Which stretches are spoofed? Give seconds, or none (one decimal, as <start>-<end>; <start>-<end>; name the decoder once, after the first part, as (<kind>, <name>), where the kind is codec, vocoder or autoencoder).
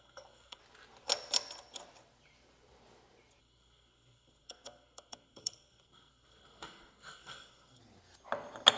0.0-0.6 (codec, SNAC); 3.4-7.8